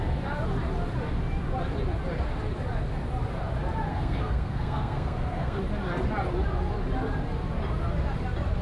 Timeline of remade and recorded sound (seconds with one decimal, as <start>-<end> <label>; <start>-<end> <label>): 0.0-3.9 recorded; 3.9-5.6 remade; 5.6-8.6 recorded